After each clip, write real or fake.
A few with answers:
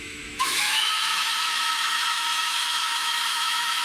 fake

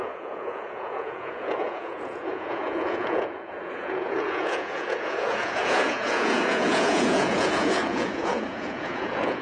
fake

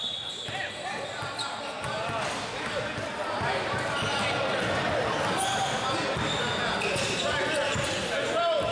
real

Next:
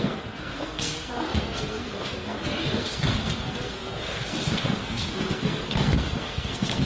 fake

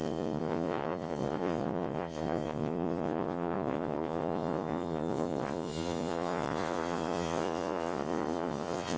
fake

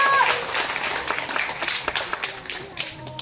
real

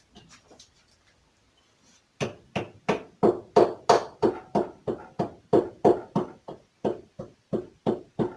real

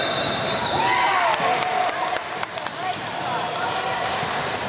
real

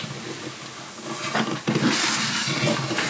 real